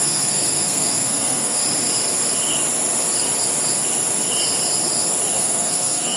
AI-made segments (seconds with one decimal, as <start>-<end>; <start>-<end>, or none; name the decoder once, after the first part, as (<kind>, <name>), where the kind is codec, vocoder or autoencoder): 0.0-1.6 (codec, SNAC); 5.3-6.2